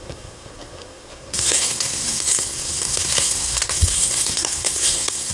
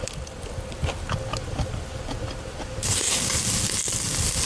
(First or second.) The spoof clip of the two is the first